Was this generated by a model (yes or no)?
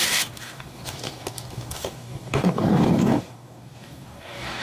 yes